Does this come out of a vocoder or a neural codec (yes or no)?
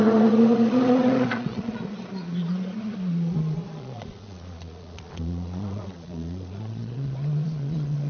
yes